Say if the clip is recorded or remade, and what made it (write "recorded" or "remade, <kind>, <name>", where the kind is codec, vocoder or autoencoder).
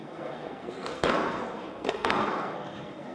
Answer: remade, codec, SNAC